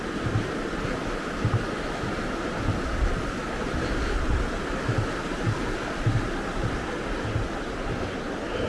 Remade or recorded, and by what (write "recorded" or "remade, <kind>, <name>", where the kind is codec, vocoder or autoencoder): recorded